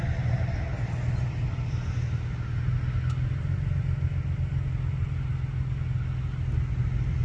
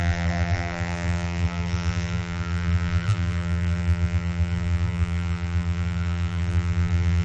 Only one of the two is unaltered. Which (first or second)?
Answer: first